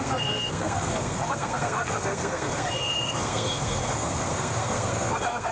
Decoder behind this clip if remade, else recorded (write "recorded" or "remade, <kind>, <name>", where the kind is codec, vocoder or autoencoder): remade, codec, SNAC